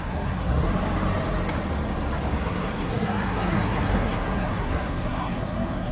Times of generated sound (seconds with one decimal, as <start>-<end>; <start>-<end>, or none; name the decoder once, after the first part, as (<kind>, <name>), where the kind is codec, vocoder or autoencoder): 0.0-0.7 (codec, SNAC); 2.3-5.9